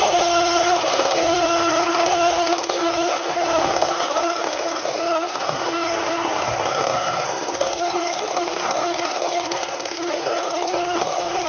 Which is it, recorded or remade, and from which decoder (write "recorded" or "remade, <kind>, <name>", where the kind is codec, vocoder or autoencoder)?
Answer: remade, codec, SNAC